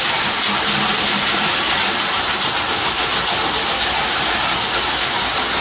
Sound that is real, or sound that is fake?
real